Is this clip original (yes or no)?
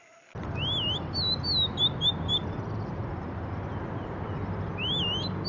yes